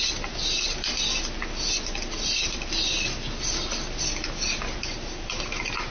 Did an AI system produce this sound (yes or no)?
no